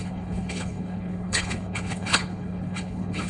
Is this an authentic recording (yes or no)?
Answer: no